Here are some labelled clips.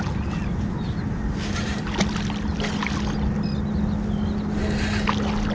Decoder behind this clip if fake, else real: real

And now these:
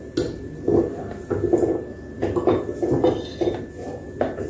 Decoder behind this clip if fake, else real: real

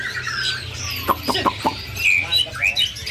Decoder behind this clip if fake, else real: real